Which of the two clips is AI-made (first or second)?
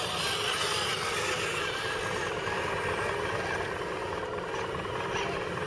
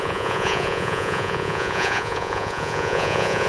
second